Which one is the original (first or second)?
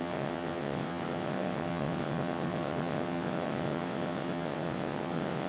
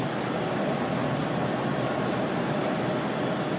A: second